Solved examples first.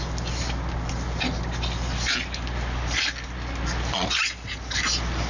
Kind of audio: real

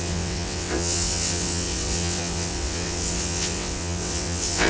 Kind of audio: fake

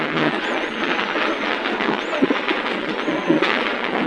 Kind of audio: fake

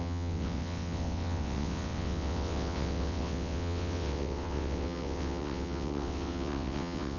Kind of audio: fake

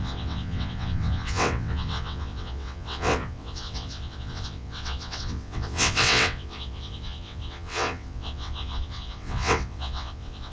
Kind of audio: fake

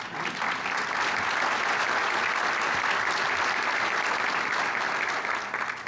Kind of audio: real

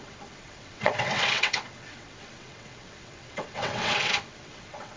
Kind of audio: fake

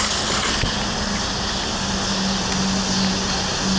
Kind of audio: real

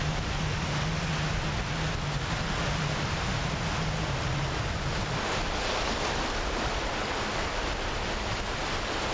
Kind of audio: real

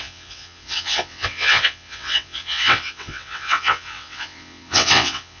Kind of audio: fake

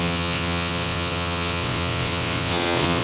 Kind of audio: fake